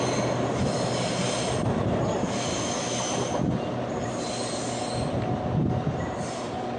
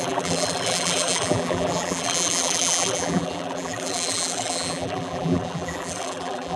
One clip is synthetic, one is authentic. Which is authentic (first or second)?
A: first